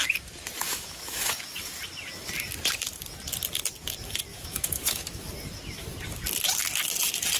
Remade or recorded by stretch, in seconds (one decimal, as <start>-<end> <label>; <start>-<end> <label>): 0.0-0.6 recorded; 0.6-1.3 remade; 1.3-4.3 recorded; 4.3-5.3 remade; 5.3-7.4 recorded